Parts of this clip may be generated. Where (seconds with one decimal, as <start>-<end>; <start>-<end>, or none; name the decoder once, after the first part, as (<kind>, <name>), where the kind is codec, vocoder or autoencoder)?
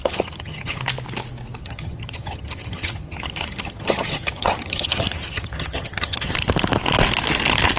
0.0-0.8 (vocoder, HiFi-GAN); 1.6-6.3